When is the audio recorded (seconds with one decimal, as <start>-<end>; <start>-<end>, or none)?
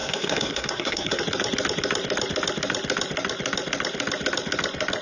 1.2-5.0